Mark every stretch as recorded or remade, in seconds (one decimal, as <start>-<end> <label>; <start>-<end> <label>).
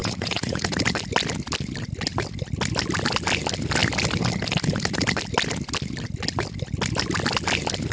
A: 0.0-0.7 remade; 0.7-7.9 recorded